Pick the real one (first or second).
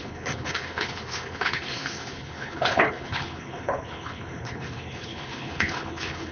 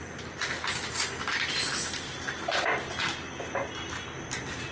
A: second